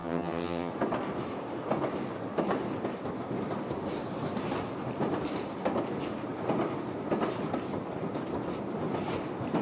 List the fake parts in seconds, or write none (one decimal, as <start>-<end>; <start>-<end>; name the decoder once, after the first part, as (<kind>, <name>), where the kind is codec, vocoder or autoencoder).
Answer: 0.0-0.7 (vocoder, HiFi-GAN)